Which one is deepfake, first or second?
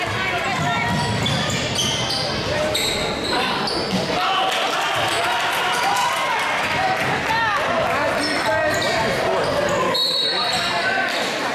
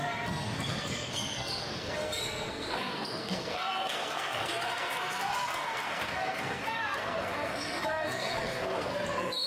second